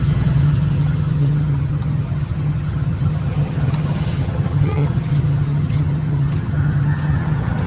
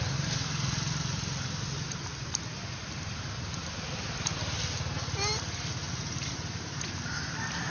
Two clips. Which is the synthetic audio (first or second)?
first